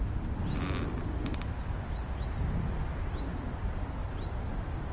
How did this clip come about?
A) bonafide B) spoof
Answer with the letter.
A